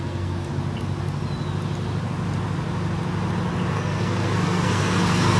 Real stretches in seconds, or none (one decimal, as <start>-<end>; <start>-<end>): 0.5-3.7